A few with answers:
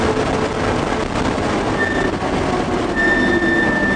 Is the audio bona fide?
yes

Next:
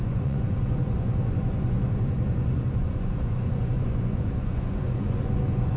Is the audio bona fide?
no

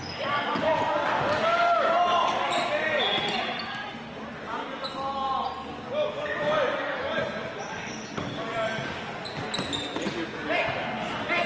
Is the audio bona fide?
yes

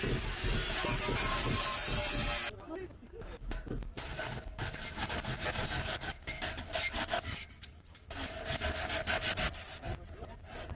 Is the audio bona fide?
yes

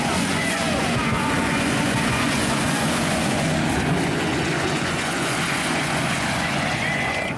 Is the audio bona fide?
no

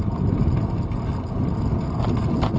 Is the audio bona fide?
yes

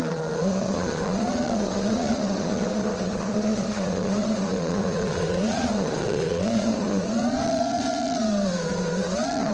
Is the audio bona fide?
no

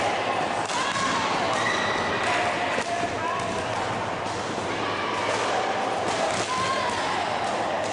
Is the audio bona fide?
yes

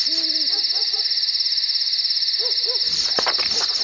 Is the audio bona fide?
yes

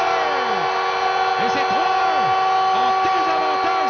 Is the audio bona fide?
yes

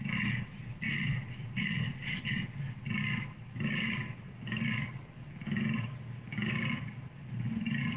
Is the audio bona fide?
yes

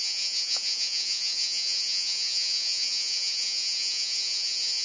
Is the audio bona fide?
no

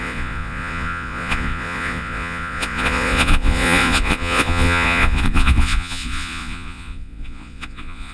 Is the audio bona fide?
no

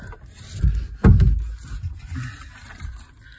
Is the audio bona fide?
yes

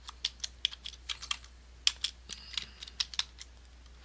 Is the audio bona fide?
yes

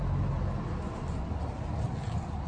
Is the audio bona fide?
yes